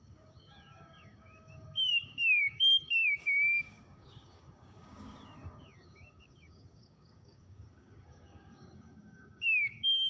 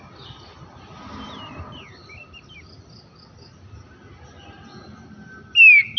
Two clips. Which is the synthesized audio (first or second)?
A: first